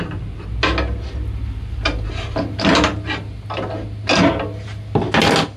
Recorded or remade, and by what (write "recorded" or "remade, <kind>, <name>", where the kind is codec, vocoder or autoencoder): recorded